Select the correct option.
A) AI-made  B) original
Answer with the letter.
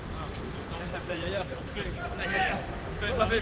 A